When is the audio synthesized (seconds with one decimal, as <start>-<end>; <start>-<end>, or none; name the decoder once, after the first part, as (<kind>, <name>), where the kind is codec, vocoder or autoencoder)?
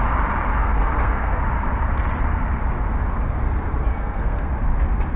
0.6-1.4 (codec, SNAC); 3.9-4.5